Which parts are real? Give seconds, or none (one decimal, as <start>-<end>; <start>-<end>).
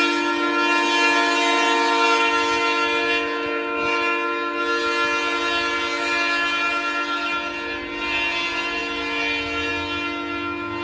0.0-10.8